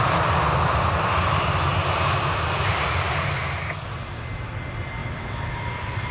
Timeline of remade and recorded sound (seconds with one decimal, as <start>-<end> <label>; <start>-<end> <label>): 0.0-5.0 recorded; 5.0-6.1 remade